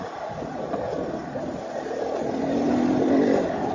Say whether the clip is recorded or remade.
recorded